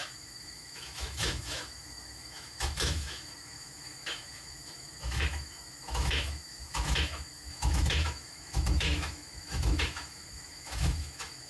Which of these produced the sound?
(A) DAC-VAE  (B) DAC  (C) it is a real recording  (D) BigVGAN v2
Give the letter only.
A